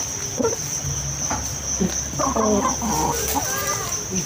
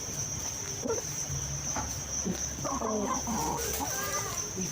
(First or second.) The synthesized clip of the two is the second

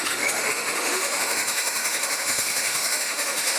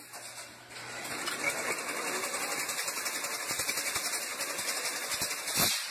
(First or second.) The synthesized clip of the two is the first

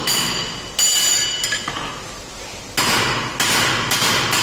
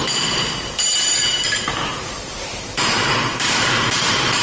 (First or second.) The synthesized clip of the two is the second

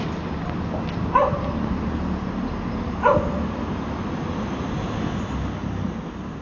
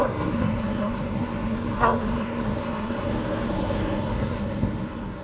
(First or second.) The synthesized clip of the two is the second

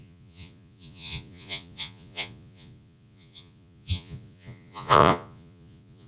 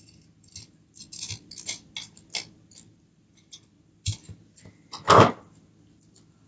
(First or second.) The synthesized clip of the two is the first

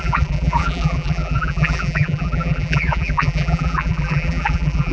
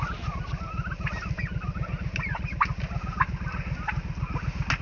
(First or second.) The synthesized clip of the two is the first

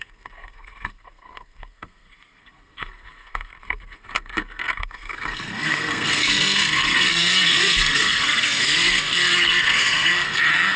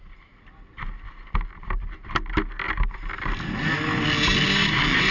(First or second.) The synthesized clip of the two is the first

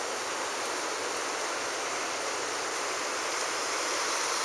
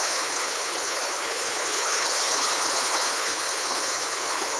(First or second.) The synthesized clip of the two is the second